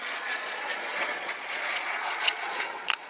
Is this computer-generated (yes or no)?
yes